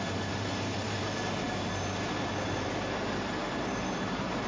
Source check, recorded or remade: remade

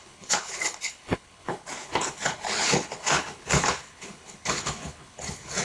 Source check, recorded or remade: remade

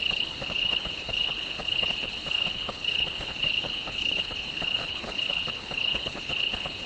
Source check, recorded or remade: remade